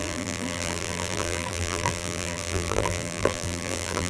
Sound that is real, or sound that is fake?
fake